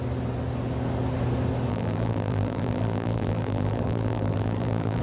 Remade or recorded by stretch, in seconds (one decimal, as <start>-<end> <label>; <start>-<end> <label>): 0.0-1.7 recorded; 1.7-5.0 remade